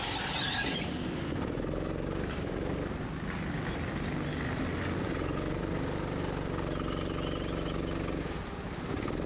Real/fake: real